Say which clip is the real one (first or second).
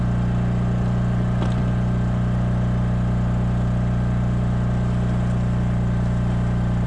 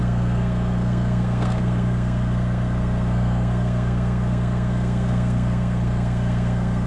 first